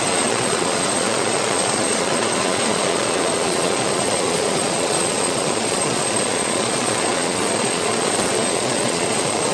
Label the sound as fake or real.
fake